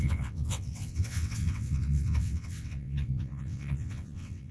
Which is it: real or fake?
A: fake